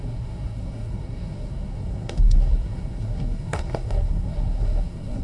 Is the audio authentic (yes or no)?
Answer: no